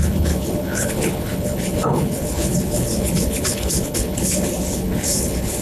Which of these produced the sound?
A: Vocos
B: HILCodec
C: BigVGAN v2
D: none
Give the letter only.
B